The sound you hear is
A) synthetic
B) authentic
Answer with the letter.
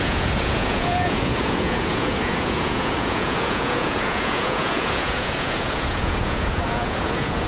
A